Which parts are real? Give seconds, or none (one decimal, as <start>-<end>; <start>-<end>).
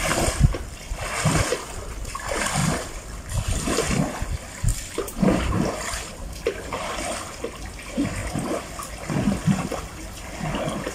0.0-2.6; 3.3-4.7; 5.5-10.9